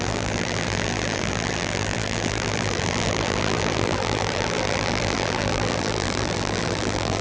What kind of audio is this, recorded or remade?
remade